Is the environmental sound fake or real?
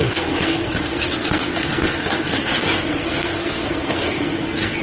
fake